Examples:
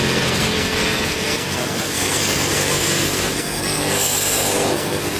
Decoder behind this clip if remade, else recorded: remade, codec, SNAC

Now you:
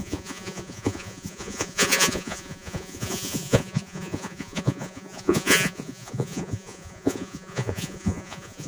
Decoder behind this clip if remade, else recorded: remade, vocoder, Vocos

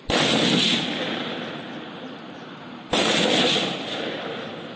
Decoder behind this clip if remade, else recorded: recorded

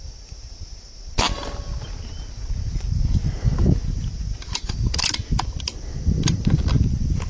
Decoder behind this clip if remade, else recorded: recorded